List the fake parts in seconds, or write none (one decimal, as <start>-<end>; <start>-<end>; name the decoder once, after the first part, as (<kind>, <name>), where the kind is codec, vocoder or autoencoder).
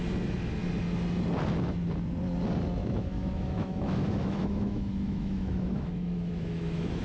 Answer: 2.8-7.0 (autoencoder, DAC-VAE)